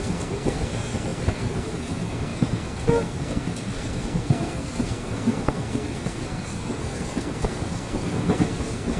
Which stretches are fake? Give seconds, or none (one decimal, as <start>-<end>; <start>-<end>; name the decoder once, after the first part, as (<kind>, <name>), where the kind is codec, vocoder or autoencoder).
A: 0.0-9.0 (codec, SNAC)